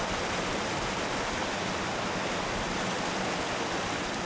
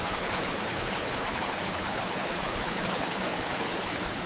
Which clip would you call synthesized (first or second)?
second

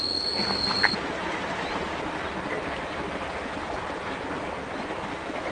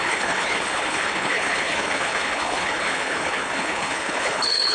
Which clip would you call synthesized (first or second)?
second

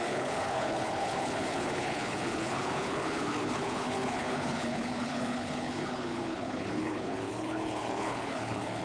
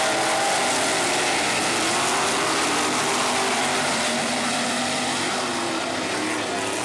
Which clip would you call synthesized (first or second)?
first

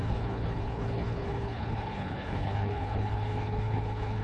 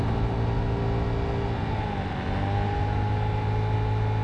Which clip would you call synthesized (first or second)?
first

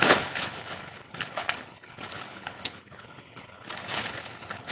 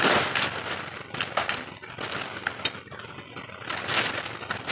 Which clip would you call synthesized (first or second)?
first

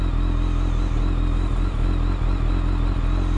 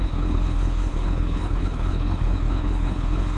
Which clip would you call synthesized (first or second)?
second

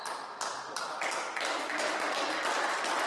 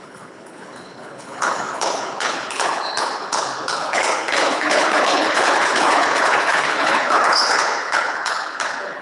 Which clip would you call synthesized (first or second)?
second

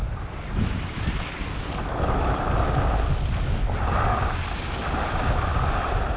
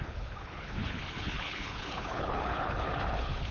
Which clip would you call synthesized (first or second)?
second